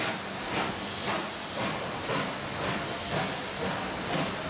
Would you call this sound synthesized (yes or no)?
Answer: no